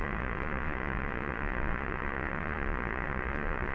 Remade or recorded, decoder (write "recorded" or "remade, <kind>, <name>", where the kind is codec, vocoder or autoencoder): remade, vocoder, Vocos